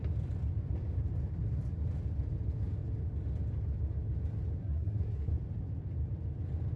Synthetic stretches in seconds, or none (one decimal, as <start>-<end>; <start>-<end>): 4.6-5.3